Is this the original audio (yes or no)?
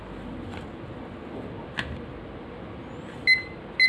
yes